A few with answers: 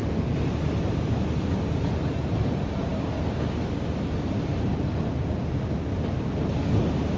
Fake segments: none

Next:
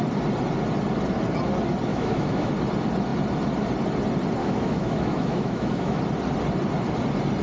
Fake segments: 1.9-2.5 (autoencoder, DAC-VAE); 4.4-6.0

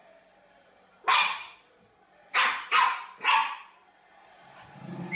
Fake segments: none